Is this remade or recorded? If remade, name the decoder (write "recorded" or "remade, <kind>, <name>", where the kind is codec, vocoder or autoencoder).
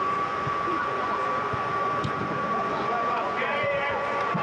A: remade, vocoder, Vocos